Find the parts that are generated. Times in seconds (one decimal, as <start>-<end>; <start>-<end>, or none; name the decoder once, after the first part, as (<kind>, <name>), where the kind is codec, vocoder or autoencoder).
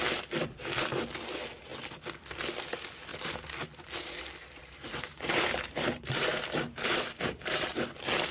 3.1-7.8 (vocoder, BigVGAN v2)